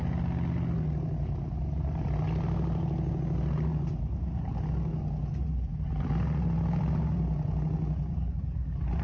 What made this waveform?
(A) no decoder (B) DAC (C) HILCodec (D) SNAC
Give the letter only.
A